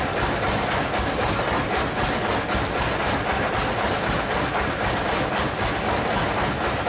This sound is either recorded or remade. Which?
recorded